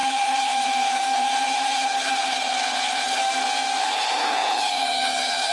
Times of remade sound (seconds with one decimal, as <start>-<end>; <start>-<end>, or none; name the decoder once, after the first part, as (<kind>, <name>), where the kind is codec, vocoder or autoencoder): 0.0-3.2 (codec, HILCodec); 3.8-5.5

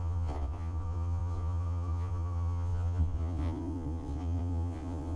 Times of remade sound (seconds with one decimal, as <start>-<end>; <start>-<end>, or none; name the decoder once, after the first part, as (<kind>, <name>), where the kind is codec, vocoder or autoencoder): 0.0-5.2 (vocoder, Vocos)